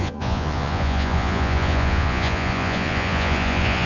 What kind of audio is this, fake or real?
fake